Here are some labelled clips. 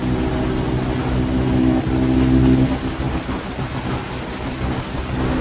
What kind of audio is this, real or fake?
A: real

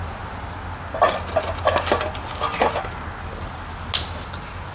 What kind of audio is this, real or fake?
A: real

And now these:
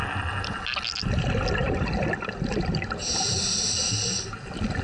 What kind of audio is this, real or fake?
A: real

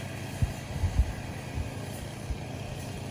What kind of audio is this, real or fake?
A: fake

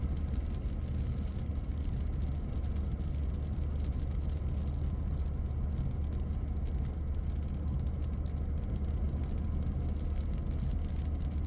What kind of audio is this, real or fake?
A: real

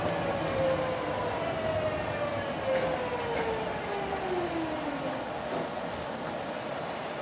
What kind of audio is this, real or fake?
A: real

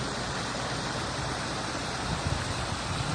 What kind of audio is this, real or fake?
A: fake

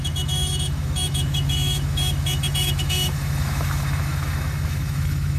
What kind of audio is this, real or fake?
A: fake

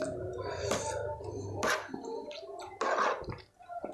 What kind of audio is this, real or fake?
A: real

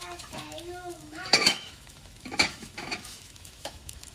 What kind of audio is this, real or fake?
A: fake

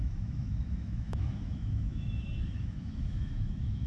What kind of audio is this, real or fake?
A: fake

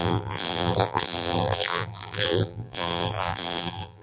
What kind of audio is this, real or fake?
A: fake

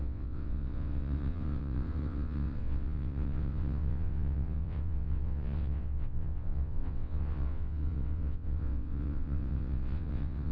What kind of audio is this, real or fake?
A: fake